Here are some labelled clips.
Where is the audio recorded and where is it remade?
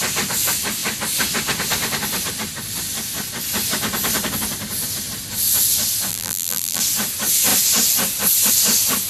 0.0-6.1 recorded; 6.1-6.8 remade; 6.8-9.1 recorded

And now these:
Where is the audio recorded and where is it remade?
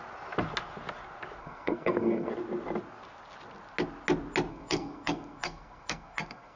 0.0-1.4 recorded; 1.4-2.3 remade; 2.3-4.5 recorded; 4.5-6.6 remade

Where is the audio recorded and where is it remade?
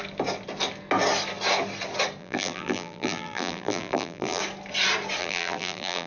0.0-2.2 recorded; 2.2-4.4 remade; 4.4-5.2 recorded; 5.2-6.1 remade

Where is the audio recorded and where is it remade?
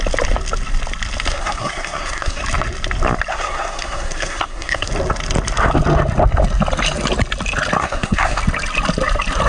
0.0-1.3 recorded; 1.3-2.4 remade; 2.4-3.3 recorded; 3.3-4.9 remade; 4.9-7.8 recorded; 7.8-8.4 remade; 8.4-9.5 recorded